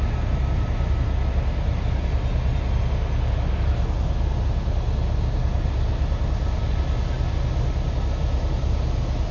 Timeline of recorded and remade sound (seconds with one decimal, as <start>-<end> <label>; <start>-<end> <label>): 0.0-9.3 recorded